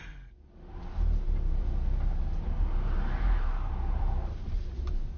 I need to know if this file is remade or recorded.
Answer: recorded